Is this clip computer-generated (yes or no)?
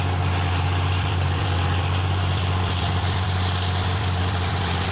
yes